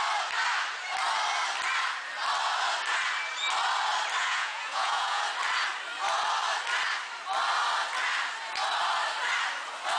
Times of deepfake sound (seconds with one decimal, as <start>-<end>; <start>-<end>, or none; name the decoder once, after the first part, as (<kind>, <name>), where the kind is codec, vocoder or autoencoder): 4.2-5.2 (vocoder, Vocos)